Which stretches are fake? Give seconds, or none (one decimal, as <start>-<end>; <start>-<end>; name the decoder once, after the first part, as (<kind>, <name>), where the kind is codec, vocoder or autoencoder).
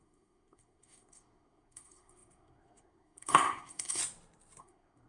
0.0-4.0 (codec, SNAC); 4.6-5.1